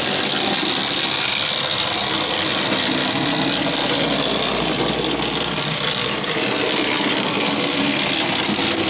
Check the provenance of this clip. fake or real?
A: real